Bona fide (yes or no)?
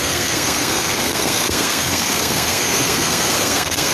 no